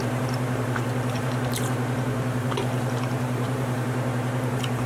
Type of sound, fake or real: fake